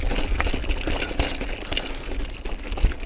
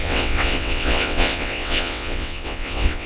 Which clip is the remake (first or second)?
second